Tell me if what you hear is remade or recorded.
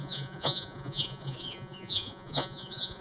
remade